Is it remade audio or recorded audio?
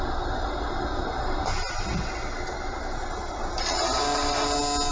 recorded